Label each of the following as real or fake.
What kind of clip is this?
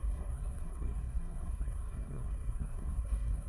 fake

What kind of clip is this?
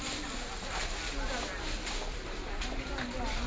real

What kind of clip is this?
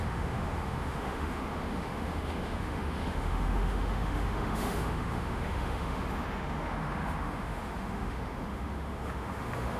fake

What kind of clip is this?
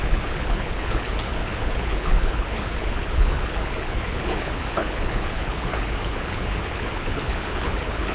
fake